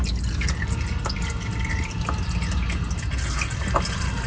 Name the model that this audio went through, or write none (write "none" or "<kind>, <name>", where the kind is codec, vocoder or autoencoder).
none